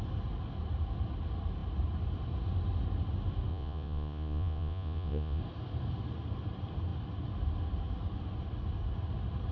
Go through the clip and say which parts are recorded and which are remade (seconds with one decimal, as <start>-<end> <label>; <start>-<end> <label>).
0.0-3.5 recorded; 3.5-5.4 remade; 5.4-9.5 recorded